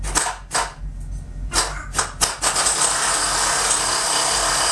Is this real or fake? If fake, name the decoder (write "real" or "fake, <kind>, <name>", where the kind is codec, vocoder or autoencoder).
real